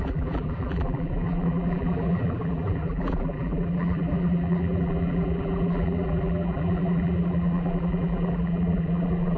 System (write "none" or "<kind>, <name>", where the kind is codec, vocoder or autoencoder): vocoder, BigVGAN v2